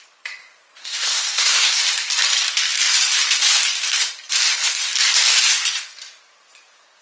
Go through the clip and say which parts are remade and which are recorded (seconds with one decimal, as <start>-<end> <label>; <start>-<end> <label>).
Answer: 0.0-0.8 recorded; 0.8-1.8 remade; 1.8-7.0 recorded

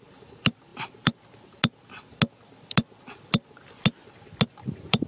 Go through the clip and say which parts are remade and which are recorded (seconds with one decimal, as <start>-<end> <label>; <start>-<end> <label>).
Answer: 0.0-5.1 recorded